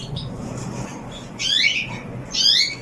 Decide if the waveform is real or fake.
fake